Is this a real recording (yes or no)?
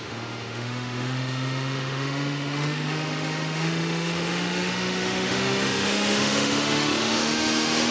no